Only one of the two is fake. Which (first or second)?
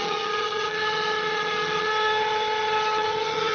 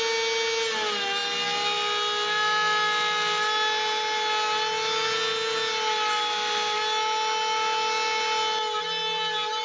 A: first